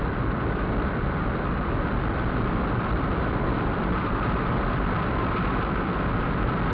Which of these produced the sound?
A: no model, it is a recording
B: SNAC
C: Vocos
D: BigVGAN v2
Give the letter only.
D